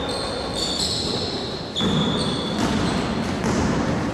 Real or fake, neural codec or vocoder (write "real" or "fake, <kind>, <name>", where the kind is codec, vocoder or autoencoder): real